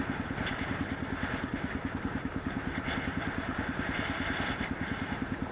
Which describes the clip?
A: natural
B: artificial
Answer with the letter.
B